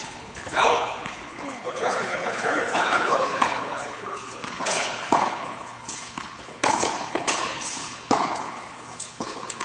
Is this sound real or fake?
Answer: fake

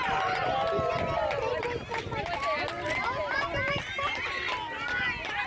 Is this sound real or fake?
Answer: real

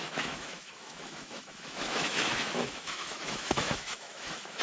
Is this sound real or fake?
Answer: fake